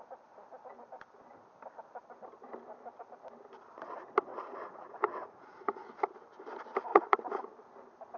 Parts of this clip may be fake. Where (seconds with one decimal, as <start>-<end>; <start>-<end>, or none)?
4.3-5.9; 6.9-7.5